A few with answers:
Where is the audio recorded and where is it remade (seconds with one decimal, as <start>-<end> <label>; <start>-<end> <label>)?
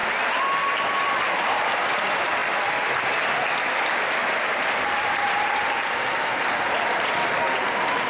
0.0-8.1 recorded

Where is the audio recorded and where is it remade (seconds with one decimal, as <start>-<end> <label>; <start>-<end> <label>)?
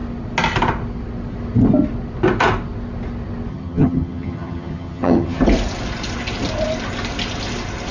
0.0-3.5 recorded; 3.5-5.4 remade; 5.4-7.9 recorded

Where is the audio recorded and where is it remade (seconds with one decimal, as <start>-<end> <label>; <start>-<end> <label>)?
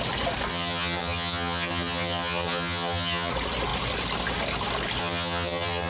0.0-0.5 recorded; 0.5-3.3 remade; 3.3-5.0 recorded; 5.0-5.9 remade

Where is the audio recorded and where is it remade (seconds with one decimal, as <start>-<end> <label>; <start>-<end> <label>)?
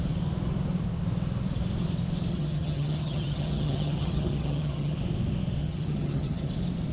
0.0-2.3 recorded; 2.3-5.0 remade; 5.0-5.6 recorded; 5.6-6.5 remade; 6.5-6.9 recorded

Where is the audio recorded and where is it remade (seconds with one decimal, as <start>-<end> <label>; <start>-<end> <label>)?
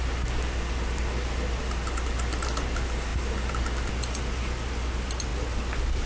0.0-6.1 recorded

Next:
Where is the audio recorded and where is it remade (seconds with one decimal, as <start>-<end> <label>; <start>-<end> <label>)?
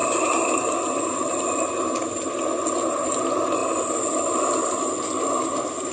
0.0-5.9 recorded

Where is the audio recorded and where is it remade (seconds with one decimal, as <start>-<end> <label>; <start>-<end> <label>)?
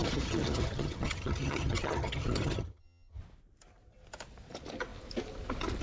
0.0-3.2 remade; 3.2-5.8 recorded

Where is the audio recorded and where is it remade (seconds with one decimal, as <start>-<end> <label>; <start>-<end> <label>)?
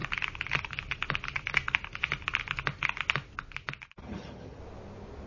0.0-4.0 recorded; 4.0-4.6 remade; 4.6-5.3 recorded